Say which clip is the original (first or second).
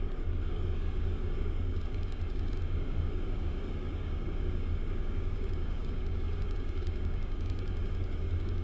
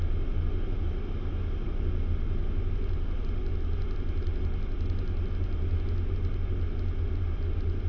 second